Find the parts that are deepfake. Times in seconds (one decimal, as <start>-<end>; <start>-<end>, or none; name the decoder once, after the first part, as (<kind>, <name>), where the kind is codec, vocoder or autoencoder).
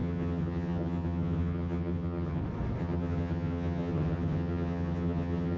0.0-2.4 (vocoder, HiFi-GAN); 2.8-5.6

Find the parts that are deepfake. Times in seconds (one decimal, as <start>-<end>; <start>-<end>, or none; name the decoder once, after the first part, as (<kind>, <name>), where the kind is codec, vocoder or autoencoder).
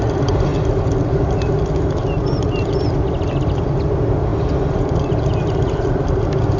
none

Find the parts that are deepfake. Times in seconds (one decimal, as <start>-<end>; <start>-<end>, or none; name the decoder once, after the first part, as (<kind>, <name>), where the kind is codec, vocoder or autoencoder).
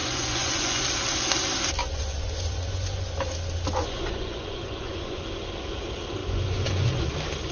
0.0-0.8 (vocoder, Vocos); 1.8-3.1; 3.8-5.2; 6.2-7.1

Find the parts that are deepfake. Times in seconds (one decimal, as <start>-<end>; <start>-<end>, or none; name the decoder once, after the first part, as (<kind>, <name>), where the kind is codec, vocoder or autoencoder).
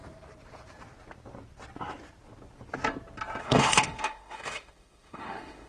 3.4-5.7 (autoencoder, DAC-VAE)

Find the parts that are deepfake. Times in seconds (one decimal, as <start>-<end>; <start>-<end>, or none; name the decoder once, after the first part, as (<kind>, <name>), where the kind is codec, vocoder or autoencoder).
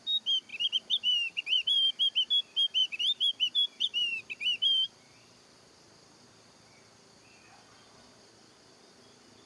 0.5-2.0 (vocoder, BigVGAN v2); 2.8-5.9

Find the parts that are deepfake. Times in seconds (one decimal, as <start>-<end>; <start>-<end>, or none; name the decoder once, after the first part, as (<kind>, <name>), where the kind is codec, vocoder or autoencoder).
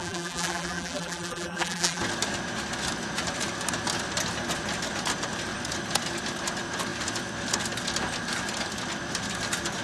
0.0-2.0 (vocoder, BigVGAN v2)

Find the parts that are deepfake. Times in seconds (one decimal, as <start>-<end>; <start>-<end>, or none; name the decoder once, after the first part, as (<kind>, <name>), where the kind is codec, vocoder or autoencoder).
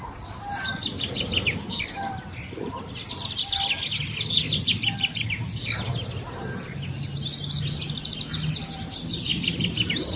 none